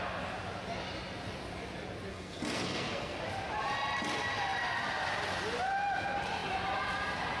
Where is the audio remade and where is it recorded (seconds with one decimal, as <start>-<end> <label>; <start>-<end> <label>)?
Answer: 0.0-2.1 recorded; 2.1-3.2 remade; 3.2-7.4 recorded